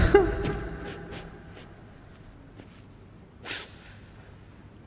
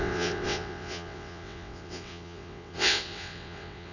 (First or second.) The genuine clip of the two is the first